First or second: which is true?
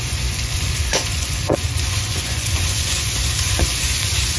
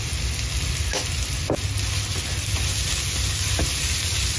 second